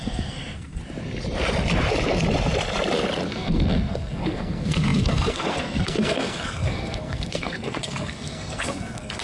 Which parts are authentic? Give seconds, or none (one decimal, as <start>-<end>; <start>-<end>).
0.8-3.3